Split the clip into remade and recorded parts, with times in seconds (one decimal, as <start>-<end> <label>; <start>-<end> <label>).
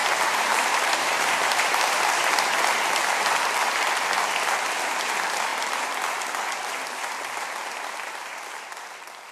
0.0-2.1 remade; 2.1-9.3 recorded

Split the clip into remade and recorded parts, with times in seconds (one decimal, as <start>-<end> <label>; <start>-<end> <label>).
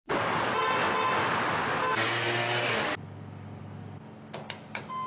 0.0-5.1 recorded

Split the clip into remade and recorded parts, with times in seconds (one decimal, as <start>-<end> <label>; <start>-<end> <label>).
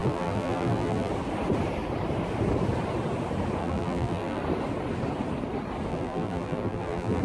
0.0-1.1 remade; 1.1-3.6 recorded; 3.6-4.4 remade; 4.4-5.9 recorded; 5.9-7.2 remade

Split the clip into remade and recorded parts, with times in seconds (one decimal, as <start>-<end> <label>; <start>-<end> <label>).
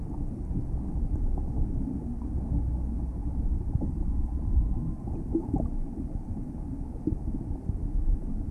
0.0-3.2 recorded; 3.2-4.4 remade; 4.4-8.5 recorded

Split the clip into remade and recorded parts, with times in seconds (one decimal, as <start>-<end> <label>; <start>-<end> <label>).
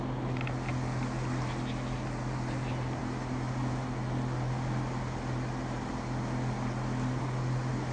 0.0-7.9 recorded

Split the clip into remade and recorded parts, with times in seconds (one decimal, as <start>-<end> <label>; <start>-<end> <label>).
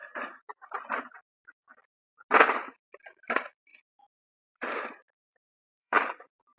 0.0-3.7 recorded; 3.7-6.6 remade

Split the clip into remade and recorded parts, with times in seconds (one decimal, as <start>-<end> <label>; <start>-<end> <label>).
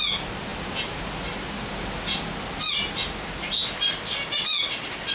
0.0-5.1 recorded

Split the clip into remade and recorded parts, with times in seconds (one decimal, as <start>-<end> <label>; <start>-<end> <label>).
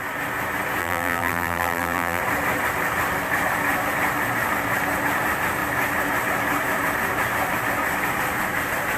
0.0-0.8 recorded; 0.8-2.2 remade; 2.2-9.0 recorded